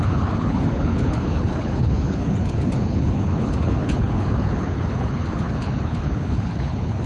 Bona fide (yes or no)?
no